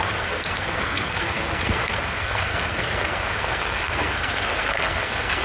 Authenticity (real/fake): fake